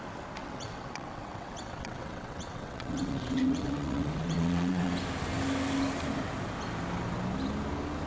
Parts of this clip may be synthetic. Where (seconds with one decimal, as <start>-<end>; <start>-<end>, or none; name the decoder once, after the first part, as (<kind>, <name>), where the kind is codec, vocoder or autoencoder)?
0.4-4.9 (vocoder, WaveNeXt)